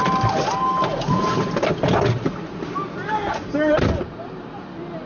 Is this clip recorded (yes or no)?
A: yes